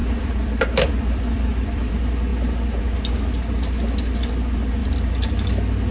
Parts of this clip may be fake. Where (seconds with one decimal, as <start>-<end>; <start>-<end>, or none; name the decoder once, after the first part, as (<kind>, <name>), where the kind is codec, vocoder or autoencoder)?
0.0-1.9 (vocoder, BigVGAN v2); 4.8-5.5

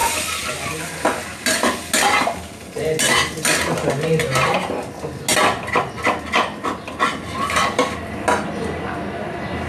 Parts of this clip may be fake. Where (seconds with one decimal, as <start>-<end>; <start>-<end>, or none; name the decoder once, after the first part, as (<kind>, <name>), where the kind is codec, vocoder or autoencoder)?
none

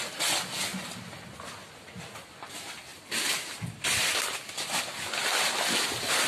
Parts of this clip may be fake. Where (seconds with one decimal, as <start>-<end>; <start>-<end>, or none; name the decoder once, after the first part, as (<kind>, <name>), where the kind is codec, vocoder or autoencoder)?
none

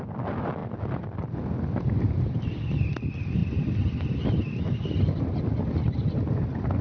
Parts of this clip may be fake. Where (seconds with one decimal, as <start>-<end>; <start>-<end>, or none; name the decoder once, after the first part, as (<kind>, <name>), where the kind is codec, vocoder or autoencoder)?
none

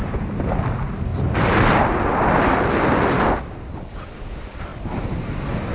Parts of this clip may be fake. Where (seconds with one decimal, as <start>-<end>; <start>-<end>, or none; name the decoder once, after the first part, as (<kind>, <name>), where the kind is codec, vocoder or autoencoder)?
0.0-4.7 (vocoder, BigVGAN v2)